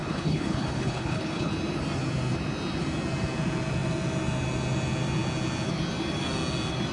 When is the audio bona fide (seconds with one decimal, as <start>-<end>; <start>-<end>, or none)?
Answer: 1.5-6.9